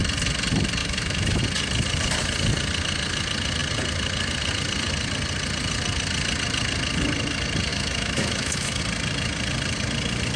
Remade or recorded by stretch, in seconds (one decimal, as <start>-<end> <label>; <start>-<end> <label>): 0.0-0.8 recorded; 0.8-1.4 remade; 1.4-7.7 recorded; 7.7-8.8 remade; 8.8-10.4 recorded